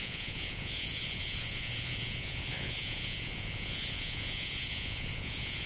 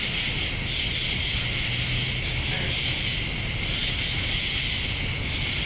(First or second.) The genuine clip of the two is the second